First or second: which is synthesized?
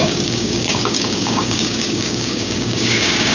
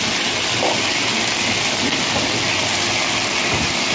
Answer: first